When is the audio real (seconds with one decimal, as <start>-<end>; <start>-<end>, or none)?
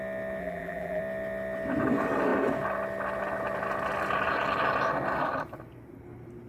0.0-0.4; 1.0-6.5